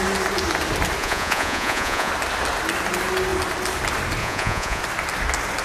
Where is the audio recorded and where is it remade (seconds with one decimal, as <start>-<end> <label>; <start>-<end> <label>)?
0.0-1.0 recorded; 1.0-2.1 remade; 2.1-4.2 recorded; 4.2-4.8 remade; 4.8-5.6 recorded